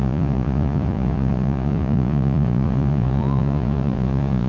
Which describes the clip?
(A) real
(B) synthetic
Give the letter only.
B